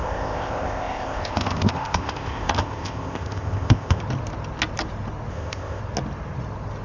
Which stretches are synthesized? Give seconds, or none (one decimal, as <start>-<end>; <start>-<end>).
0.0-4.0; 5.3-5.8

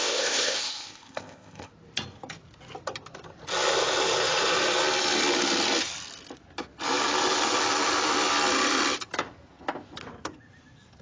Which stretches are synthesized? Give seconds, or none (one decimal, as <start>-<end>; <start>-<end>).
0.0-1.7

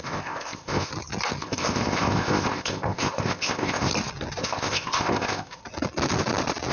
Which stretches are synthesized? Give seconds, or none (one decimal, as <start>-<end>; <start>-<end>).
0.0-0.9; 1.4-3.9; 4.4-5.6

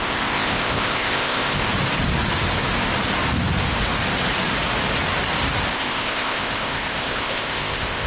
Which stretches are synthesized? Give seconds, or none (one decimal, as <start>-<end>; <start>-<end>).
0.0-1.7; 5.7-8.1

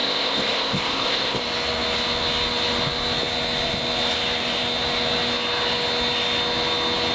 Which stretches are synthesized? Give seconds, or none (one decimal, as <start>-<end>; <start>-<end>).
0.0-1.4

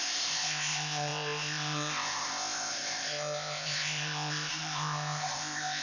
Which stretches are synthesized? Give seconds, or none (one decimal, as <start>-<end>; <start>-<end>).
0.0-5.8